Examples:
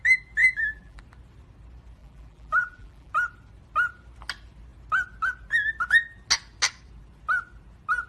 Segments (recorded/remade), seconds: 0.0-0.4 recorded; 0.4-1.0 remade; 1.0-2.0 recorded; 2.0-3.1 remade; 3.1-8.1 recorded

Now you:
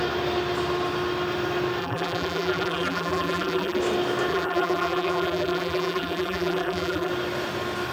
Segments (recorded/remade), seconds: 0.0-1.8 recorded; 1.8-3.8 remade; 3.8-4.3 recorded; 4.3-7.1 remade; 7.1-7.9 recorded

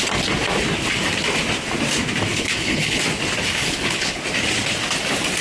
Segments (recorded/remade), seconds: 0.0-2.3 recorded; 2.3-3.0 remade; 3.0-3.6 recorded; 3.6-4.2 remade; 4.2-5.4 recorded

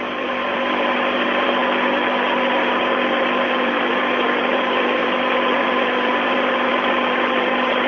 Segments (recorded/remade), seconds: 0.0-1.6 remade; 1.6-2.8 recorded; 2.8-5.0 remade; 5.0-5.6 recorded; 5.6-6.7 remade; 6.7-7.9 recorded

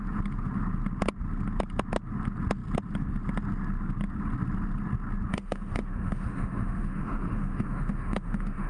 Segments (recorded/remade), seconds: 0.0-5.3 recorded; 5.3-8.7 remade

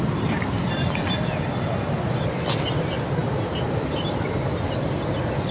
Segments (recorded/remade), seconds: 0.0-3.2 recorded; 3.2-4.1 remade; 4.1-5.5 recorded

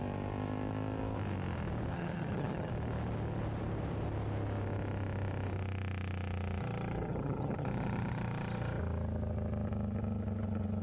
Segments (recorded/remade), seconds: 0.0-1.9 recorded; 1.9-2.7 remade; 2.7-6.6 recorded; 6.6-8.8 remade; 8.8-10.8 recorded